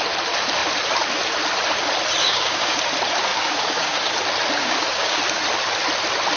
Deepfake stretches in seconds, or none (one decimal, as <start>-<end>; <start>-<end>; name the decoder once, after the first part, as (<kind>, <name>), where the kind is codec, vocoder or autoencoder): 2.2-2.8 (codec, DAC); 3.3-4.1; 4.6-5.2